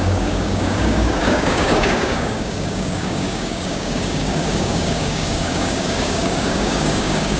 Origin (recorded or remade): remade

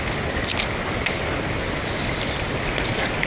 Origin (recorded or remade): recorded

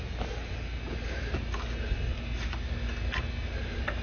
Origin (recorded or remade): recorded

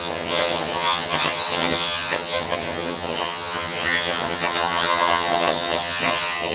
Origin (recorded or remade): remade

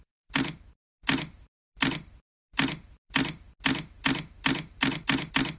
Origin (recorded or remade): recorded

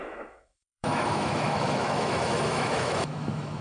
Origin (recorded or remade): remade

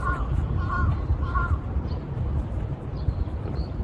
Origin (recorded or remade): recorded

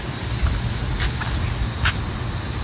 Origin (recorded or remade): recorded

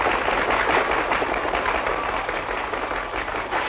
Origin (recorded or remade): recorded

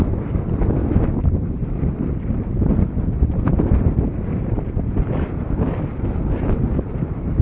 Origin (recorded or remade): remade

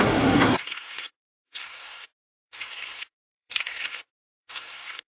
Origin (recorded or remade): remade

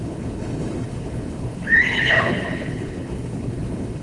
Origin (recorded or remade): remade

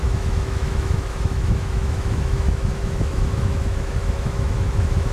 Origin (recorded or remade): remade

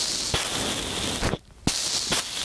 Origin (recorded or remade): recorded